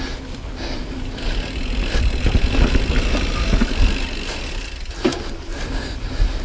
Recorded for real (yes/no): yes